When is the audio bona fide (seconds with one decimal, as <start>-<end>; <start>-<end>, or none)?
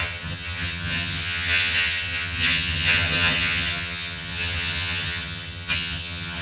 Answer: none